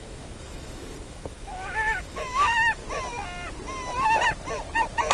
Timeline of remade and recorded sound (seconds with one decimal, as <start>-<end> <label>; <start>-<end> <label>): 0.0-2.8 remade; 2.8-5.1 recorded